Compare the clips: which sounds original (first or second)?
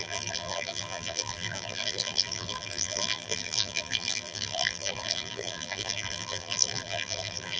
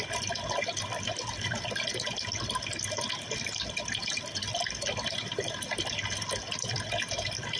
second